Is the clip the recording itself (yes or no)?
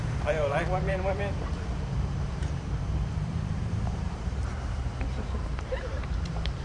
no